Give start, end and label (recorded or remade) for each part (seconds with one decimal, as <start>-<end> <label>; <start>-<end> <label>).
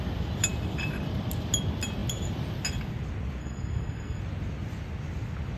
0.0-3.4 recorded; 3.4-4.2 remade; 4.2-5.6 recorded